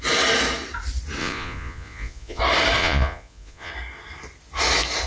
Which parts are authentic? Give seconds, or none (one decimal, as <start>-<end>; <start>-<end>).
0.0-1.2; 2.4-2.8; 3.7-5.1